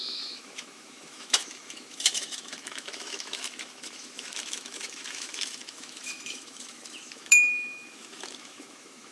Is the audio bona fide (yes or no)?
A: no